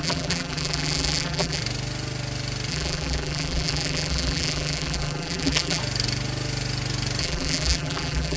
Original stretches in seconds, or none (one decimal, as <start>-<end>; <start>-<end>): 1.6-2.7; 5.8-7.2